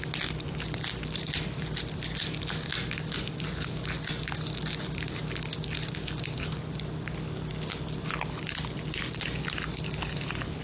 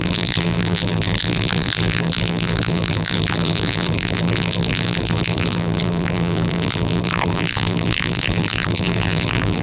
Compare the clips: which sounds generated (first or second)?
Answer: second